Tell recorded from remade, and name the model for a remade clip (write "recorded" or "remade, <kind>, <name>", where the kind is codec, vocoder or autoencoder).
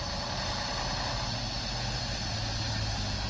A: recorded